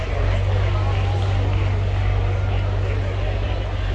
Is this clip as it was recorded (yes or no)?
yes